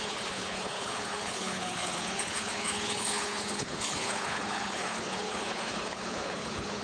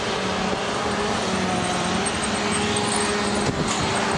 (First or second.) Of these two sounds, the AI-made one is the first